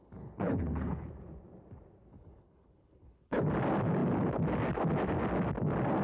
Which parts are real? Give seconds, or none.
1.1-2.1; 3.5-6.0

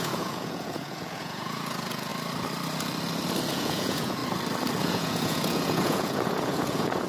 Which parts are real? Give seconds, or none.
2.1-3.5; 4.2-4.8

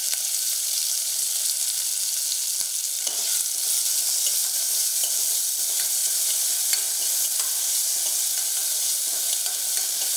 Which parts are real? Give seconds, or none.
1.3-4.4; 5.1-6.0; 6.7-10.2

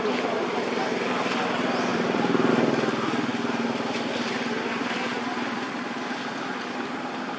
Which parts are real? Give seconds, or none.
0.0-1.9; 2.5-7.4